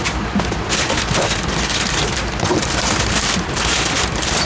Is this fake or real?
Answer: fake